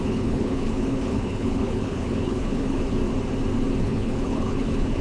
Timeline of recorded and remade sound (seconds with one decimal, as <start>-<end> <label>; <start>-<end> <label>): 0.0-3.0 remade; 3.0-3.8 recorded; 3.8-5.0 remade